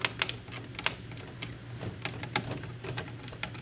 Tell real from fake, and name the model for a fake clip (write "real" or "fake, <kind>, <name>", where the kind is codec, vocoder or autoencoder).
real